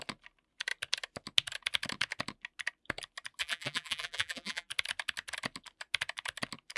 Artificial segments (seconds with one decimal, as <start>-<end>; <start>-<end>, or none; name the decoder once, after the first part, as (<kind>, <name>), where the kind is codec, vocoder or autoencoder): 3.4-4.7 (vocoder, BigVGAN v2)

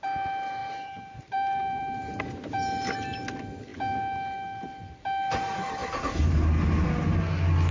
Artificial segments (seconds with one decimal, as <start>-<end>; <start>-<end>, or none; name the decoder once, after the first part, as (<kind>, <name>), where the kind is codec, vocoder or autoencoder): 0.6-2.2 (vocoder, BigVGAN v2)